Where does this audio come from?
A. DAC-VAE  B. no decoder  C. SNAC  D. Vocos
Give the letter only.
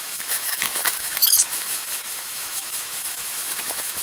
A